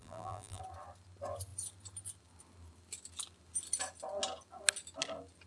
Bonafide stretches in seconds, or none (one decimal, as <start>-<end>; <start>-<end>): 0.6-5.5